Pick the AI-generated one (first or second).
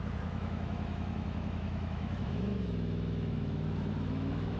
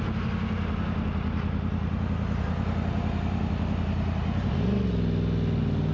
first